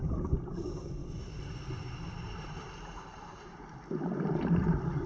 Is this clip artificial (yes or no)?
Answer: yes